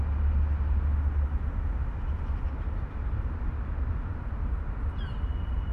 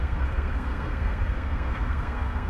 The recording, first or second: first